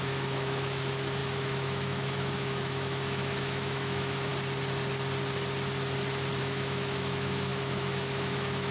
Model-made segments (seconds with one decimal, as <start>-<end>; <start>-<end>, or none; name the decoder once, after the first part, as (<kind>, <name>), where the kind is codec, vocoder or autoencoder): 0.0-4.3 (autoencoder, DAC-VAE); 6.4-8.7